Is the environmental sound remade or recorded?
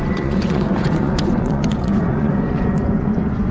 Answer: remade